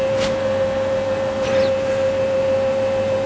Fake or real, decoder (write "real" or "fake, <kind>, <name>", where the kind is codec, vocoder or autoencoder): real